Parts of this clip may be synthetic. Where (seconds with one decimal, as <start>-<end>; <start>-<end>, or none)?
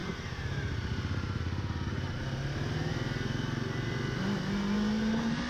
0.0-1.4